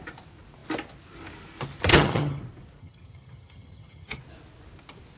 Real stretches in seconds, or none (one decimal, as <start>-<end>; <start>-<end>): 0.0-1.9; 2.4-2.8; 4.2-5.2